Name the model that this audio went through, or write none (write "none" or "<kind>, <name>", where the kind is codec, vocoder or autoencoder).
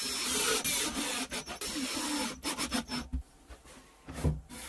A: none